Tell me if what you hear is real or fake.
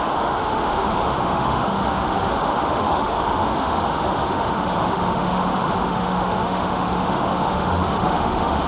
fake